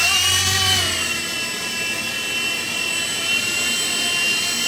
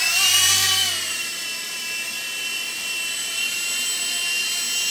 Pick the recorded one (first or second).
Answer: first